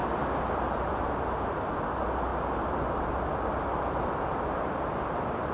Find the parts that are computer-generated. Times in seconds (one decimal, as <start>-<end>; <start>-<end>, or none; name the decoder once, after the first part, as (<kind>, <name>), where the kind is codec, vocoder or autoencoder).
none